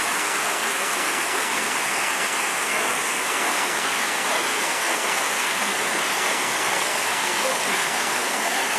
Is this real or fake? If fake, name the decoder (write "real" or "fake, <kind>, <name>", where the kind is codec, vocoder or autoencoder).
fake, codec, SNAC